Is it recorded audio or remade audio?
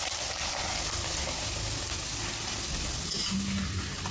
recorded